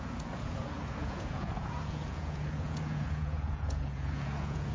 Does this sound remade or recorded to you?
remade